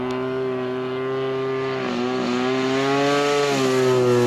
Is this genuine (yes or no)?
yes